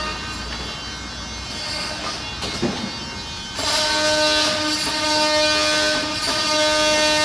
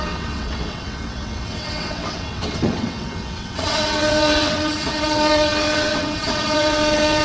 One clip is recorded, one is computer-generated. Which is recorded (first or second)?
first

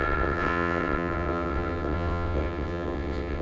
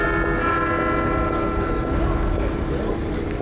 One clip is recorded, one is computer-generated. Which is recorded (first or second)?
second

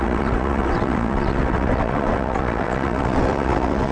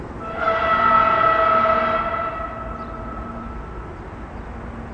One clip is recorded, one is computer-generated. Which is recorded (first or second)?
second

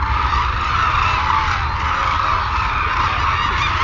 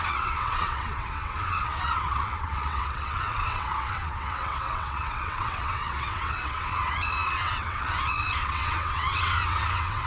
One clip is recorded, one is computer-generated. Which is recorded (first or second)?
first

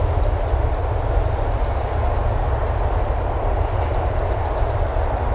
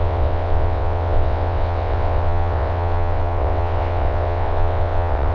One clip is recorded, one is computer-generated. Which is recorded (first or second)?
first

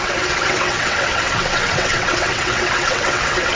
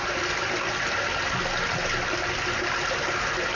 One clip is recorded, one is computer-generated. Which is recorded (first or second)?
second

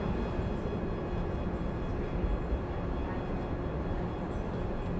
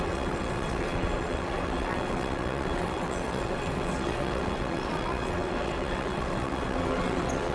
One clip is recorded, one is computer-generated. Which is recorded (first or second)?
first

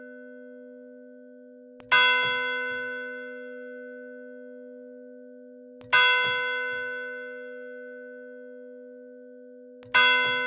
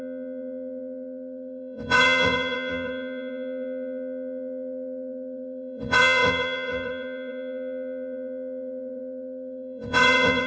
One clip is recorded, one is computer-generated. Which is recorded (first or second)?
first